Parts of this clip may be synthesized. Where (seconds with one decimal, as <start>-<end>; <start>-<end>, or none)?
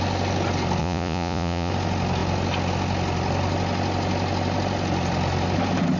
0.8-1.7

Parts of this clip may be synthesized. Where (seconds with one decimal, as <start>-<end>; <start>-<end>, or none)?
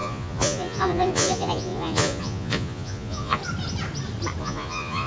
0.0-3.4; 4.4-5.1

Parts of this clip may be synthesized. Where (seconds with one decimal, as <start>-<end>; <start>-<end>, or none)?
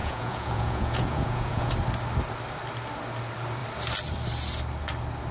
0.0-1.7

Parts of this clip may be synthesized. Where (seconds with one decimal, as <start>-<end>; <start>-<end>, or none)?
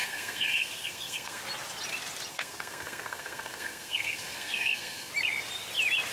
0.0-1.4; 2.3-5.1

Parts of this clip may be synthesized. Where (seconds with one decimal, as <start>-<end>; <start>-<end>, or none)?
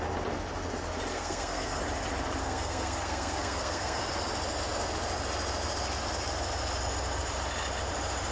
1.1-1.8; 2.4-4.0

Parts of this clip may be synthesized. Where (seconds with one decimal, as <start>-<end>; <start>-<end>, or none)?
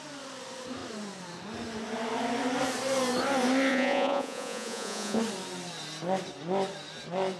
3.7-5.2